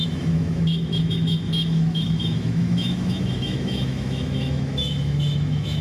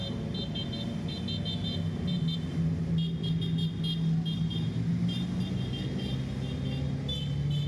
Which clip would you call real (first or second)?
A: second